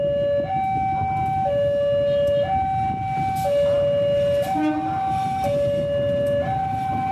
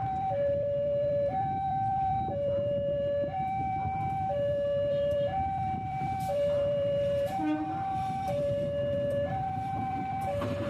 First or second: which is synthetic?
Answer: second